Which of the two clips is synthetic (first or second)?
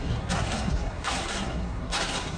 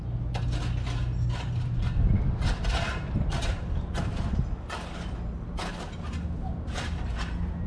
first